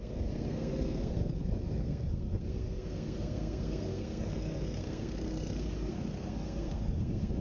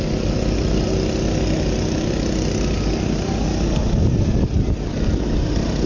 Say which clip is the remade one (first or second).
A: first